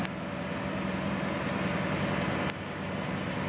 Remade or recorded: recorded